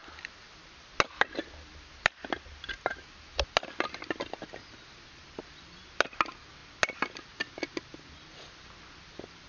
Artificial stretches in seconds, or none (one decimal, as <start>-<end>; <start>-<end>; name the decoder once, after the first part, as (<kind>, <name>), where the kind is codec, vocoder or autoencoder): none